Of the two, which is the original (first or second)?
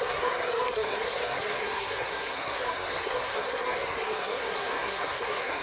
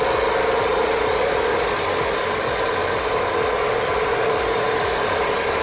second